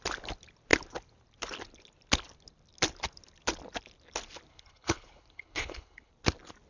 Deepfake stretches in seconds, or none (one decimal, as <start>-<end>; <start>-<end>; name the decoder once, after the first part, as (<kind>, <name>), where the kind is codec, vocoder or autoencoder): 4.5-6.1 (codec, HILCodec)